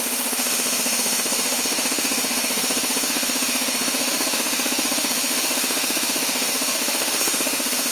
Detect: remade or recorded remade